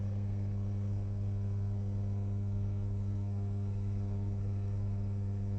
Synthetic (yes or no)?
yes